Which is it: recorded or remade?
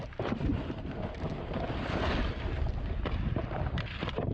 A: recorded